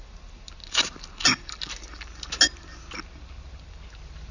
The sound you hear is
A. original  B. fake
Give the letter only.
A